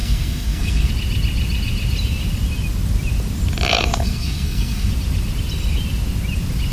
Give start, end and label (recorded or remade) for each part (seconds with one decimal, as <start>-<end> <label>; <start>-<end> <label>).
0.0-0.9 remade; 0.9-3.7 recorded; 3.7-4.9 remade; 4.9-6.7 recorded